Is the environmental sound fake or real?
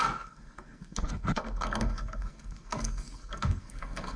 fake